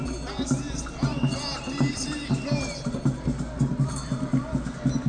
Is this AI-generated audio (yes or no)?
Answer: no